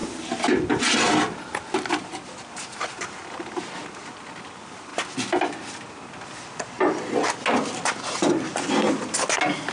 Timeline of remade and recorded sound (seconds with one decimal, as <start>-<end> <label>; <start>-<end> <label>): 0.0-9.7 recorded